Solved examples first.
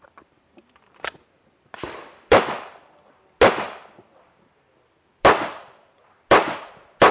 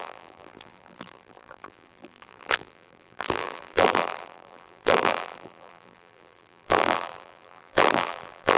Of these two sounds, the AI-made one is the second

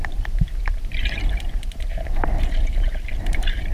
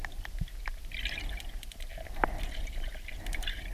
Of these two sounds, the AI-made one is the first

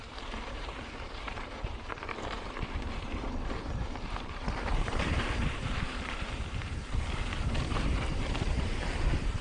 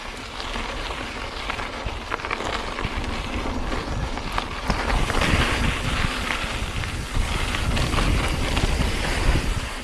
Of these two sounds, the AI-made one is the first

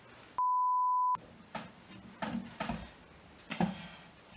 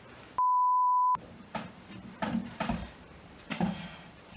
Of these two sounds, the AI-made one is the second